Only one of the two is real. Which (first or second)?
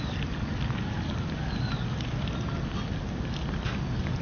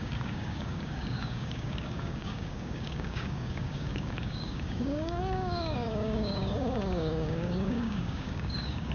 first